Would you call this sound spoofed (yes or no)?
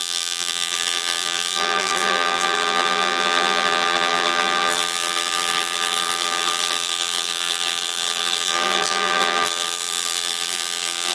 yes